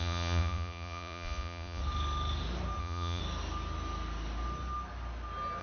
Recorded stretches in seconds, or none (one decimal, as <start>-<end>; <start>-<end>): 1.8-2.8; 3.2-5.6